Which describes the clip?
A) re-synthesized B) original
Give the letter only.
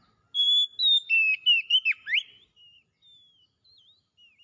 B